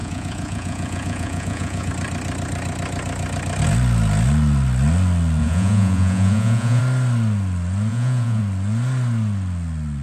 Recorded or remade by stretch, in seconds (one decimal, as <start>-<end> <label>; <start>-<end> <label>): 0.0-1.9 remade; 1.9-5.4 recorded; 5.4-6.8 remade; 6.8-7.9 recorded; 7.9-8.4 remade; 8.4-10.0 recorded